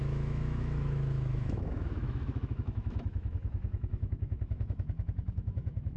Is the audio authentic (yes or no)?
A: no